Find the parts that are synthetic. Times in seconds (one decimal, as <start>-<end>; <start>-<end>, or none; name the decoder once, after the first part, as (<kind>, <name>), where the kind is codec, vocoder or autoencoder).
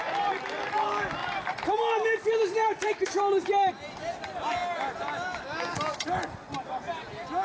1.2-3.7 (vocoder, BigVGAN v2)